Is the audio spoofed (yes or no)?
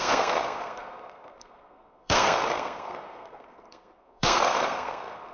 yes